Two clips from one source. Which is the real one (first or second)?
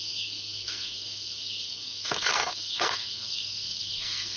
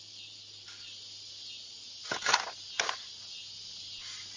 second